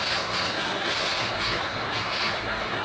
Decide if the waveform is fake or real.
fake